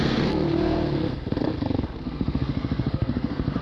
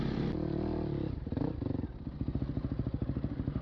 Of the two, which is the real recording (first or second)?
second